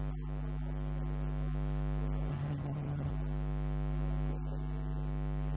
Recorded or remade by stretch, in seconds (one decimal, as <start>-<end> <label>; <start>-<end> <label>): 0.0-2.3 recorded; 2.3-3.1 remade; 3.1-5.6 recorded